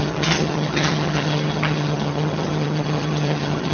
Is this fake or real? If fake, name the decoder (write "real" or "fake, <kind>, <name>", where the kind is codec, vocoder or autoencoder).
fake, vocoder, HiFi-GAN